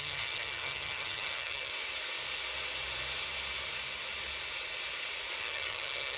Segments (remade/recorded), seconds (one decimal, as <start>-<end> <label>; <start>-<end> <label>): 0.0-1.7 remade; 1.7-5.4 recorded; 5.4-6.2 remade